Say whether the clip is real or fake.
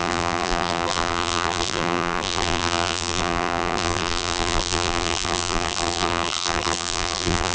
fake